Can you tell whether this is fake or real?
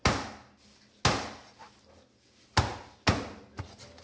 real